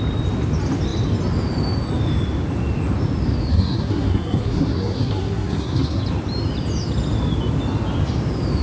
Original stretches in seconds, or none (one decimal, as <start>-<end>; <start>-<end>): 0.0-3.5; 6.0-8.6